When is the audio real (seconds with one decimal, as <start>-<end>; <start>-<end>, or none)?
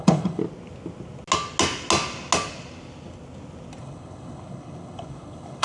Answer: 0.4-3.8